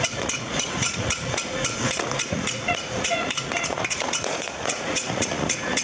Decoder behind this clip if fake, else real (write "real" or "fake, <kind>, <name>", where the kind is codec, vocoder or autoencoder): fake, vocoder, Vocos